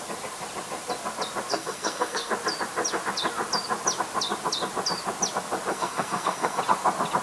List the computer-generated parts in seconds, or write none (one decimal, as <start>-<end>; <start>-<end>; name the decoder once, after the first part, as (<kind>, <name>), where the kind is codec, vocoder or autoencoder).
1.5-2.3 (codec, SNAC); 5.7-6.6